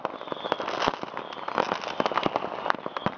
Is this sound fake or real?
real